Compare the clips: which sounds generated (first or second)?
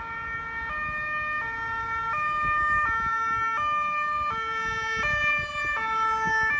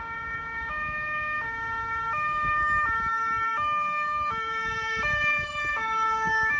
second